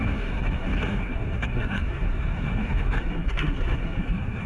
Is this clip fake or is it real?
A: fake